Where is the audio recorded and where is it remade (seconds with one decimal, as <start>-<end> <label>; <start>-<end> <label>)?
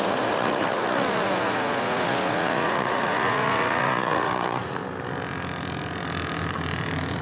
0.0-4.8 remade; 4.8-7.2 recorded